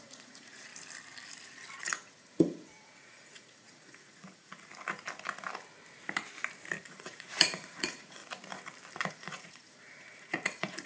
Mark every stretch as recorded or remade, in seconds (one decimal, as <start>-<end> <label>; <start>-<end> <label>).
0.0-0.7 remade; 0.7-1.8 recorded; 1.8-4.7 remade; 4.7-6.8 recorded; 6.8-8.2 remade; 8.2-9.1 recorded; 9.1-10.9 remade

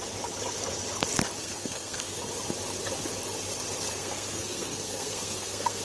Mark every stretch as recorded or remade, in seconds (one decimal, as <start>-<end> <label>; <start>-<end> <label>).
0.0-1.4 recorded; 1.4-2.2 remade; 2.2-3.9 recorded; 3.9-5.8 remade

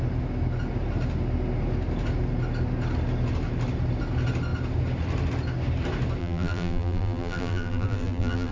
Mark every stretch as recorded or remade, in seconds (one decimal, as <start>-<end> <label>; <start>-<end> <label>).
0.0-6.2 recorded; 6.2-8.5 remade

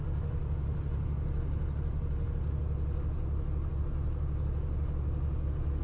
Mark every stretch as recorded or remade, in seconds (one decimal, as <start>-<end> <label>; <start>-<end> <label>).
0.0-5.8 recorded

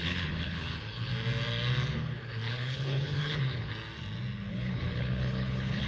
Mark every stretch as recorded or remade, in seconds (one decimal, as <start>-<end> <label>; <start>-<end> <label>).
0.0-1.1 remade; 1.1-1.9 recorded; 1.9-3.7 remade; 3.7-4.5 recorded; 4.5-5.9 remade